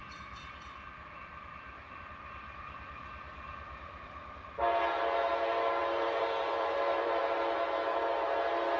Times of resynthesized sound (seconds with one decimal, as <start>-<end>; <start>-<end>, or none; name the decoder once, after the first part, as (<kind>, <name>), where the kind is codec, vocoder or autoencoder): 0.0-4.2 (vocoder, BigVGAN v2); 5.8-7.2